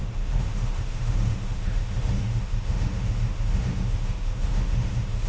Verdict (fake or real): fake